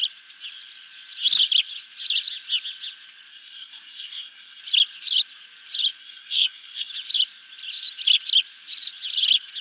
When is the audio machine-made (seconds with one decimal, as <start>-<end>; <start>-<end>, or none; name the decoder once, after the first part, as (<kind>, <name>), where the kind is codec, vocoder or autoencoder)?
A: 3.3-4.6 (codec, SNAC); 6.0-6.9